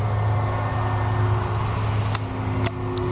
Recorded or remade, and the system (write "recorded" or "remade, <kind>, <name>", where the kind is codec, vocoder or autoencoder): recorded